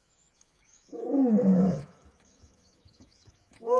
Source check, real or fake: fake